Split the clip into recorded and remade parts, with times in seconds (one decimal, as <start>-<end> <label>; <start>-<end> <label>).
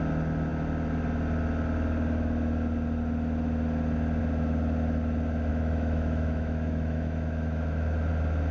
0.0-5.5 recorded; 5.5-8.1 remade; 8.1-8.5 recorded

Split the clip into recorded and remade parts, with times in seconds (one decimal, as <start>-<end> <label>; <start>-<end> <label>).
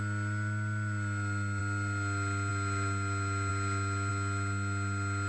0.0-5.3 recorded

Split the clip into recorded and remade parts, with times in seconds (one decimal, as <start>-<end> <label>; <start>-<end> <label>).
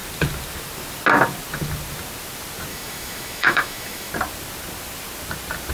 0.0-2.7 recorded; 2.7-4.1 remade; 4.1-5.7 recorded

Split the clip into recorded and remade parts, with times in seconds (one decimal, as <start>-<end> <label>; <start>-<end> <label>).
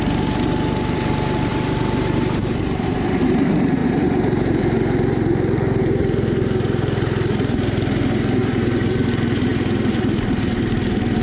0.0-11.2 remade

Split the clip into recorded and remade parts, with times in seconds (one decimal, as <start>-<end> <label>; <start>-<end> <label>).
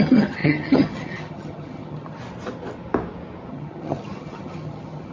0.0-2.2 remade; 2.2-3.5 recorded; 3.5-5.1 remade